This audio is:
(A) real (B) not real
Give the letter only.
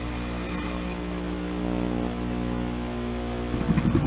A